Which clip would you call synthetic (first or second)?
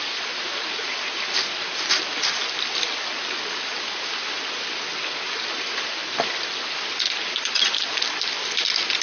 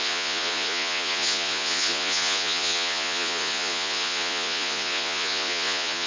second